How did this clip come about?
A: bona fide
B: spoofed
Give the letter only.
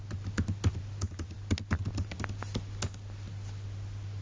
A